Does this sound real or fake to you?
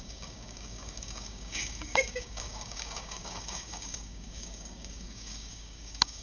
fake